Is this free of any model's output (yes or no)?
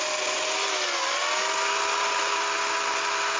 yes